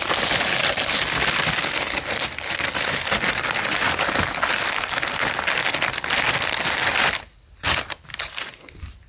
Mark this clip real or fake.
real